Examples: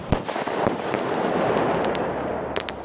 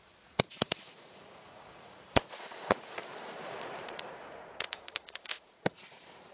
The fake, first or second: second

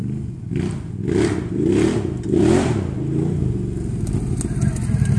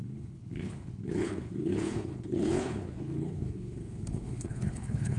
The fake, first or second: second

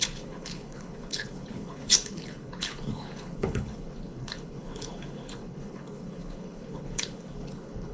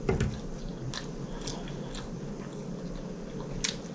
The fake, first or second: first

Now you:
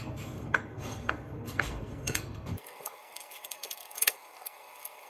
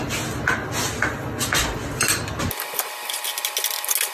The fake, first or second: first